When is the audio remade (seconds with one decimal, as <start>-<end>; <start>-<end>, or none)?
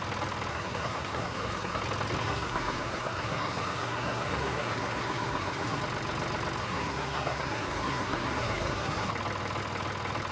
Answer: 0.5-1.8; 2.2-5.8; 6.6-9.1